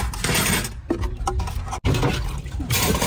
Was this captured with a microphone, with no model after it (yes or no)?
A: yes